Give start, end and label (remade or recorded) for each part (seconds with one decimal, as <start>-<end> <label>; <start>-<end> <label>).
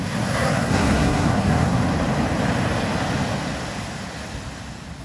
0.0-1.8 remade; 1.8-5.0 recorded